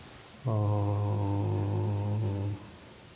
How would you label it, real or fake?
real